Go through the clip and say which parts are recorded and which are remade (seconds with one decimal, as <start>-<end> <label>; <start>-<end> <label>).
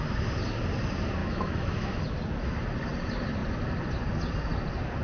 0.0-1.2 recorded; 1.2-2.0 remade; 2.0-5.0 recorded